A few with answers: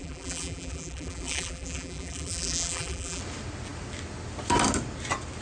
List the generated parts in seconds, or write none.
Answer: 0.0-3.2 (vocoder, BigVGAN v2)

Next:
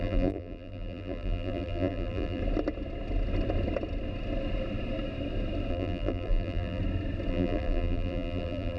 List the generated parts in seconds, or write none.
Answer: 0.0-2.4 (vocoder, BigVGAN v2); 5.7-6.8; 7.3-8.8